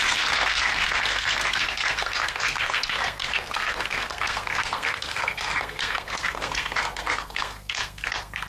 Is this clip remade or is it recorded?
remade